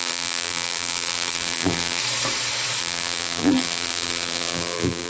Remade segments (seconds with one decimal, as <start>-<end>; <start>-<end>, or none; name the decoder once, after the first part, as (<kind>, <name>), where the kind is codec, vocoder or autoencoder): 0.0-2.0 (vocoder, BigVGAN v2); 2.8-5.1